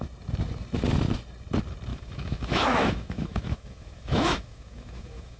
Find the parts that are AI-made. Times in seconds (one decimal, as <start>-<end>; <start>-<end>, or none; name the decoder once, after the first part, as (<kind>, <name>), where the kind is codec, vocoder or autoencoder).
1.9-5.4 (autoencoder, DAC-VAE)

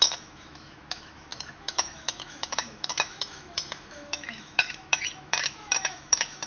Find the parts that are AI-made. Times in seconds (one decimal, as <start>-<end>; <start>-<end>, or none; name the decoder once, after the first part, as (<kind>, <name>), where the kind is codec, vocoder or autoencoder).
0.0-6.5 (autoencoder, DAC-VAE)

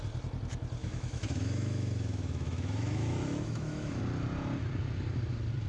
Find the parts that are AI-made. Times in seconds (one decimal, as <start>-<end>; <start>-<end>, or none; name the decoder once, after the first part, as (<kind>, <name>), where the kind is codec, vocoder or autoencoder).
0.8-4.0 (autoencoder, DAC-VAE)

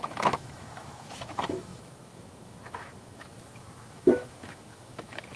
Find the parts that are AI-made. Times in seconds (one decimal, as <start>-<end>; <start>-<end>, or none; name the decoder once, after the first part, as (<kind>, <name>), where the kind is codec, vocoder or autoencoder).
0.0-5.4 (autoencoder, DAC-VAE)

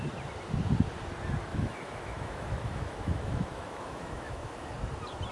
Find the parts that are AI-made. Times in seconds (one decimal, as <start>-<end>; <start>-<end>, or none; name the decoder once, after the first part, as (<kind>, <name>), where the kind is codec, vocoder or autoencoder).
1.5-4.7 (autoencoder, DAC-VAE)